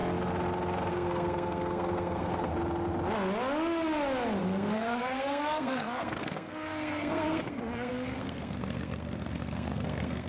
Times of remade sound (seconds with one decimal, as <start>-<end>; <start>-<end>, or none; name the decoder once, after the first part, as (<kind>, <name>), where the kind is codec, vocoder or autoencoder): 0.9-2.5 (codec, SNAC); 4.4-10.3